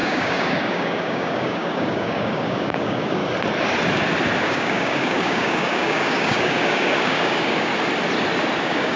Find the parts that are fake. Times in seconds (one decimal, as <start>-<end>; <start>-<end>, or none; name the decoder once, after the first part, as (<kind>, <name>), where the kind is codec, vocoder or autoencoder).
0.0-3.2 (codec, DAC); 4.4-7.7; 8.6-9.0